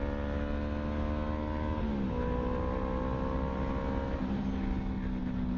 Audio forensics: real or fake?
real